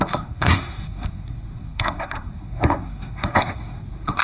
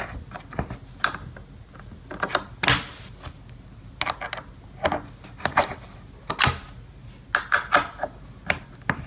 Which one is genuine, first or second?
second